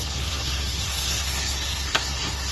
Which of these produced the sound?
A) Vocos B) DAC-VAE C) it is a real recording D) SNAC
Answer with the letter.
D